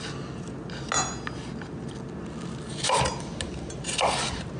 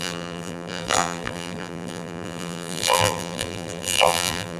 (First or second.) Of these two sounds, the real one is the first